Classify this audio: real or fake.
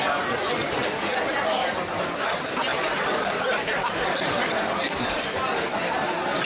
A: real